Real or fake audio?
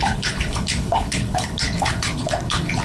fake